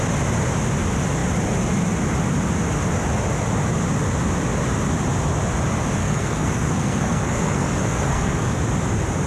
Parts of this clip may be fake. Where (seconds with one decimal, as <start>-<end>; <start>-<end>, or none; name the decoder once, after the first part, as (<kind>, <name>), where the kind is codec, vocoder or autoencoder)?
6.0-8.6 (codec, SNAC)